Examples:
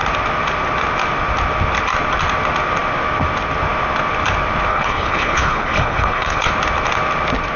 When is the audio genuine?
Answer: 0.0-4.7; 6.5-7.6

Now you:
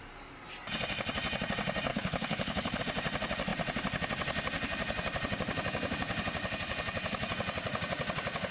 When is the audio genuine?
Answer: 0.0-1.9; 2.8-8.5

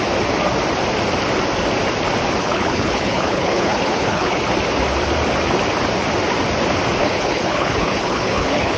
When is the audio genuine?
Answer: 0.0-2.4; 4.4-7.0

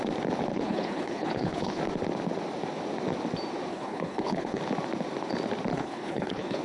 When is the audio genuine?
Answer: 0.0-0.5; 1.8-3.7; 4.6-5.7

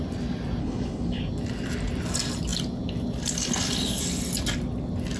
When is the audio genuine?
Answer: 0.0-0.6; 1.2-5.2

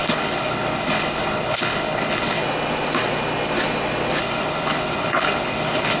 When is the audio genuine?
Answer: 2.4-4.2

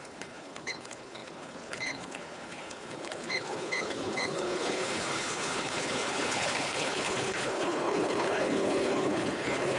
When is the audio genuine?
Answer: none

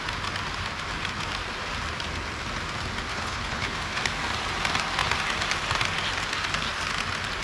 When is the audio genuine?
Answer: 0.0-3.1; 4.0-7.4